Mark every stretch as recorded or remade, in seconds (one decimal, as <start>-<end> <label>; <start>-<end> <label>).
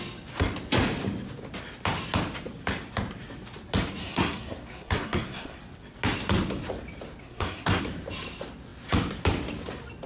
0.0-4.0 recorded; 4.0-5.6 remade; 5.6-7.2 recorded; 7.2-7.8 remade; 7.8-10.1 recorded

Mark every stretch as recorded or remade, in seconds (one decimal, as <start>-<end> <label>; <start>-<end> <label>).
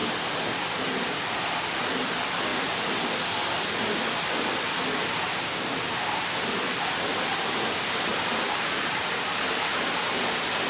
0.0-8.1 recorded; 8.1-9.8 remade; 9.8-10.7 recorded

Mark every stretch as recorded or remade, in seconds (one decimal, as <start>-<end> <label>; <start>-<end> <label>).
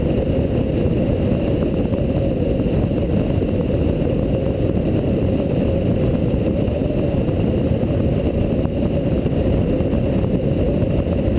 0.0-11.4 recorded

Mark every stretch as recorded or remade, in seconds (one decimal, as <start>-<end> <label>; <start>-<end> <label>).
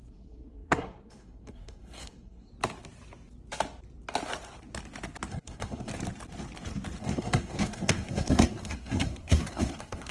0.0-2.5 remade; 2.5-5.3 recorded; 5.3-5.9 remade; 5.9-7.0 recorded; 7.0-10.1 remade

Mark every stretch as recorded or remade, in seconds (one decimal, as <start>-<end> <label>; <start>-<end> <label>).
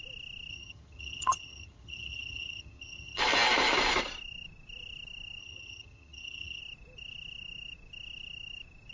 0.0-0.5 recorded; 0.5-3.2 remade; 3.2-5.4 recorded; 5.4-6.6 remade; 6.6-8.9 recorded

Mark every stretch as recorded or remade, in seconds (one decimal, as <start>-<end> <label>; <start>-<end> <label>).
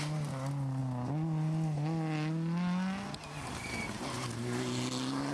0.0-5.3 recorded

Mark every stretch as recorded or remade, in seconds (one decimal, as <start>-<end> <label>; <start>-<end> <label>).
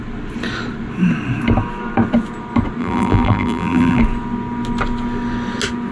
0.0-2.8 recorded; 2.8-4.0 remade; 4.0-5.9 recorded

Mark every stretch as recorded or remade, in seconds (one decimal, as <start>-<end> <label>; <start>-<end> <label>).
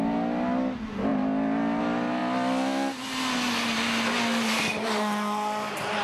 0.0-6.0 recorded